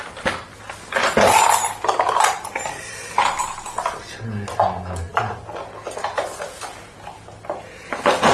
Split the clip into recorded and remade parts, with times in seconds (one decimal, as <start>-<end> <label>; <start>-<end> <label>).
0.0-8.3 recorded